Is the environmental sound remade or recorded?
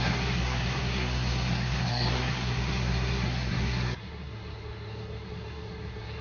remade